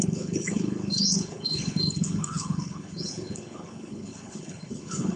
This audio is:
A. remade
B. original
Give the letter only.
A